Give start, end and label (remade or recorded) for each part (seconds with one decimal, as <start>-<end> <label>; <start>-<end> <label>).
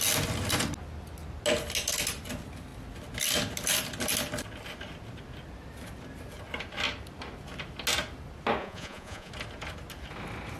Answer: 0.0-8.6 recorded; 8.6-9.3 remade; 9.3-10.6 recorded